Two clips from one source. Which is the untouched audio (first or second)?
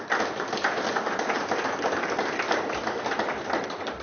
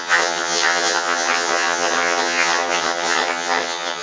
first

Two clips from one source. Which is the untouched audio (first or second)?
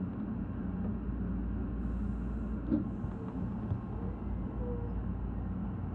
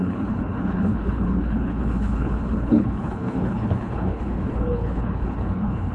first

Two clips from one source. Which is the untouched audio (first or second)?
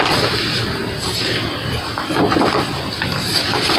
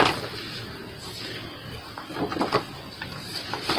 first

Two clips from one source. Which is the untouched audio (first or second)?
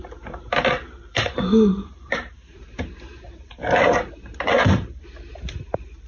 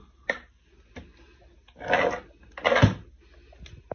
second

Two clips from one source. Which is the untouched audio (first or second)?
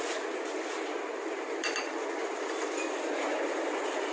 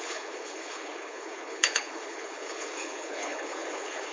first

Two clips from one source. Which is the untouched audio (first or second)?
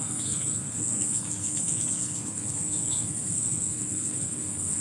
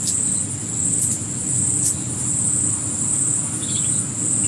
second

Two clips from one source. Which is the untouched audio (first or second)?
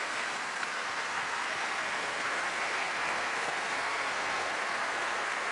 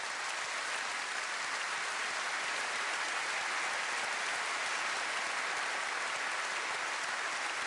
second